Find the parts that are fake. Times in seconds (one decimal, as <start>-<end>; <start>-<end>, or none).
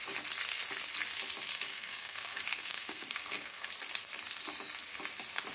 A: 1.7-3.7